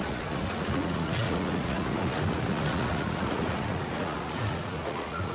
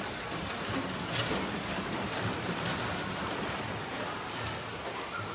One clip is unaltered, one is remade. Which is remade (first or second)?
first